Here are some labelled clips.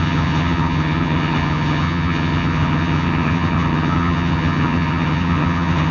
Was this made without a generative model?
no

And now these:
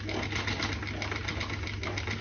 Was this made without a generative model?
yes